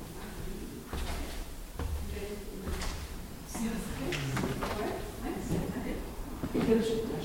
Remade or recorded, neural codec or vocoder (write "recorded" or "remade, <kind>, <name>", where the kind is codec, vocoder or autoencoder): remade, vocoder, BigVGAN v2